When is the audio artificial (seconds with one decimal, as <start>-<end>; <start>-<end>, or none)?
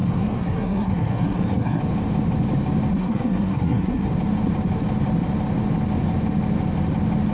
0.0-1.8; 2.9-4.1